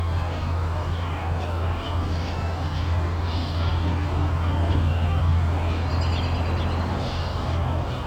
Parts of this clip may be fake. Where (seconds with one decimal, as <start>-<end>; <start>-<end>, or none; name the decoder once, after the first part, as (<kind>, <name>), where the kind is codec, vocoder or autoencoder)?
0.0-5.9 (codec, DAC); 6.9-8.1